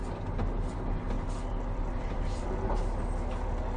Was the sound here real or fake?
real